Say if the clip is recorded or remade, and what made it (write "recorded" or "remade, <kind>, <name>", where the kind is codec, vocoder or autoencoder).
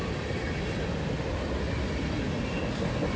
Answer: recorded